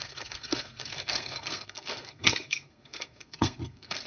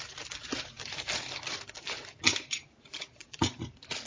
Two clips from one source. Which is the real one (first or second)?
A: second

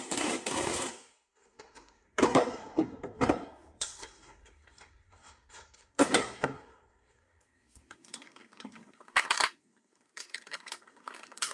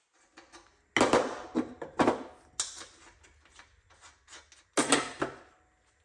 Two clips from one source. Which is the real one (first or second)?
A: second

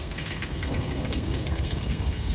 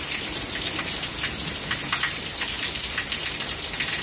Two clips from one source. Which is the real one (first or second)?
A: second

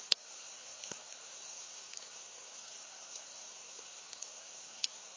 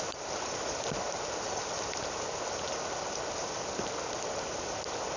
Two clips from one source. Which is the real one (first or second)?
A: second